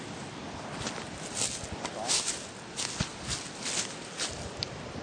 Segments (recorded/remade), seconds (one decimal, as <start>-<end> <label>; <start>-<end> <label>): 0.0-5.0 recorded